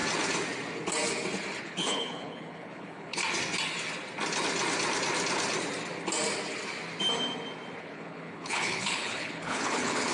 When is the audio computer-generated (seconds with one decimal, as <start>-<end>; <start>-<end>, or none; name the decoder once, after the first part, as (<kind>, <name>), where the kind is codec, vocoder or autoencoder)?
1.6-3.2 (codec, HILCodec); 7.8-10.1